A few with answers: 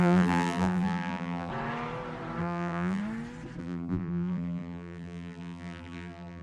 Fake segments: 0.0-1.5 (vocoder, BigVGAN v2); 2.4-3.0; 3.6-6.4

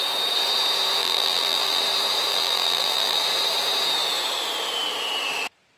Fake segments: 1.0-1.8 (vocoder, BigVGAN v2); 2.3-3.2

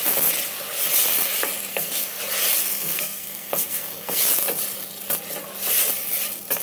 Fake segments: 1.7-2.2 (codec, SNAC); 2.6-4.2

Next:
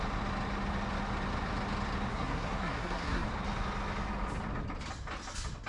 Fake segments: 2.1-3.3 (codec, SNAC)

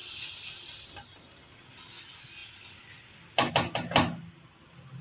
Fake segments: none